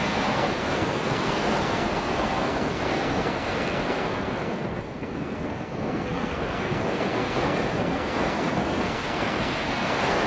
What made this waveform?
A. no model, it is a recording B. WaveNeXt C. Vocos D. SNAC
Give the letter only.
D